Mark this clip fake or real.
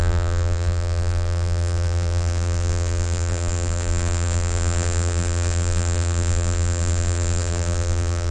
fake